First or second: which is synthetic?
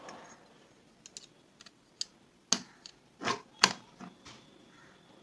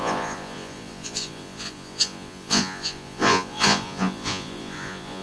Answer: second